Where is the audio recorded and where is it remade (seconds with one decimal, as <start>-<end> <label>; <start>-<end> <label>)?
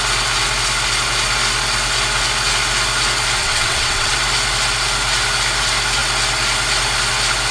0.0-3.4 recorded; 3.4-4.1 remade; 4.1-7.5 recorded